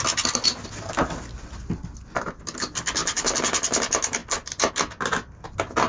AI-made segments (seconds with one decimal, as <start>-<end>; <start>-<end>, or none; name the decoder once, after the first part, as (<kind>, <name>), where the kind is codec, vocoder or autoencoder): none